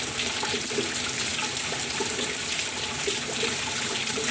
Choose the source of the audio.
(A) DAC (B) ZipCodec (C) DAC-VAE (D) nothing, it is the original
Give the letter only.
D